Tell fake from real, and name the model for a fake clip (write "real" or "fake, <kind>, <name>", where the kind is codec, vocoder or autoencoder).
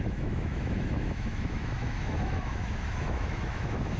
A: fake, autoencoder, DAC-VAE